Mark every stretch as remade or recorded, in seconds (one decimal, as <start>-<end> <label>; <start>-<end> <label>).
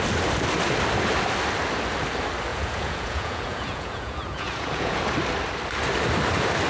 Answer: 0.0-2.5 recorded; 2.5-5.0 remade; 5.0-6.7 recorded